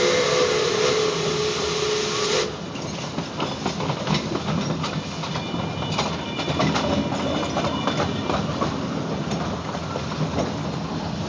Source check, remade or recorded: recorded